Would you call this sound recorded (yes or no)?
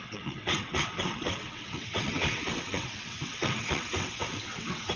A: no